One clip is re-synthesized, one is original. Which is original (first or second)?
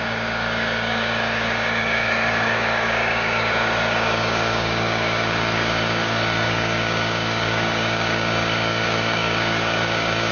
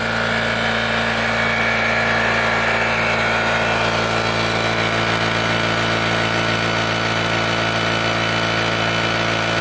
second